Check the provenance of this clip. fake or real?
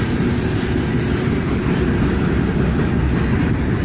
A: real